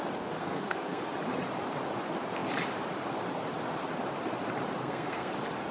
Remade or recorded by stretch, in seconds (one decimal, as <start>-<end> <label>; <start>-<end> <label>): 0.0-0.4 recorded; 0.4-1.0 remade; 1.0-4.8 recorded; 4.8-5.3 remade; 5.3-5.7 recorded